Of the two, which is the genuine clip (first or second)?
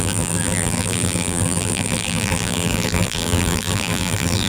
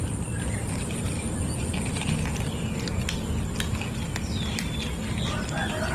second